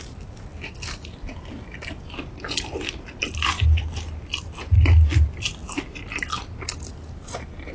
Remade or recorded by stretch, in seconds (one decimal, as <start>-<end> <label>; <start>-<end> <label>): 0.0-7.7 recorded